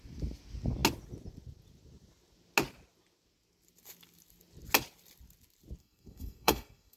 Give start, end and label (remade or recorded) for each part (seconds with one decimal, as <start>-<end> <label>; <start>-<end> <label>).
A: 0.0-5.8 recorded; 5.8-7.0 remade